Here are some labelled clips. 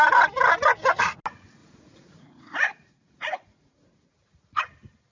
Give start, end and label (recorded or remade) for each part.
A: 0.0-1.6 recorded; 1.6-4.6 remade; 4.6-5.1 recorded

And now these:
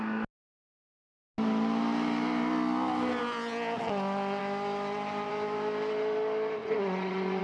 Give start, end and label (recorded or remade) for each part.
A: 0.0-6.6 recorded; 6.6-7.4 remade

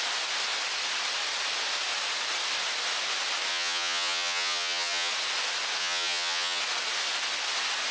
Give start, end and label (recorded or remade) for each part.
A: 0.0-3.5 recorded; 3.5-5.1 remade; 5.1-5.8 recorded; 5.8-6.6 remade; 6.6-7.9 recorded

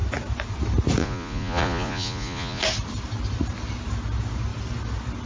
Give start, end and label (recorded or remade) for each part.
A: 0.0-1.0 recorded; 1.0-2.6 remade; 2.6-5.3 recorded

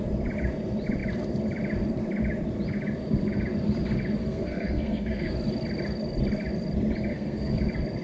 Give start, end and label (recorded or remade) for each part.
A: 0.0-4.2 recorded; 4.2-5.3 remade; 5.3-7.1 recorded; 7.1-7.6 remade; 7.6-8.0 recorded

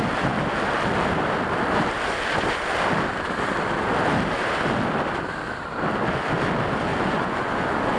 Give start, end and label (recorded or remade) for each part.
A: 0.0-6.9 recorded; 6.9-8.0 remade